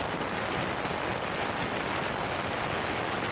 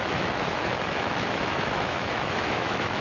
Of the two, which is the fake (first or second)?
second